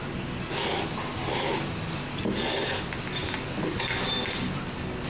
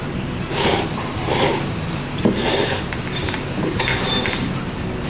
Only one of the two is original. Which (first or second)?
first